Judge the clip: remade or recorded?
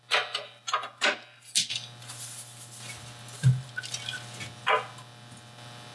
recorded